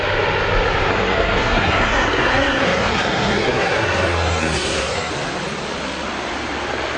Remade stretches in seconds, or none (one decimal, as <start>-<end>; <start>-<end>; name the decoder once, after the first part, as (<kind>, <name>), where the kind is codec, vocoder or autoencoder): 0.9-5.1 (codec, SNAC)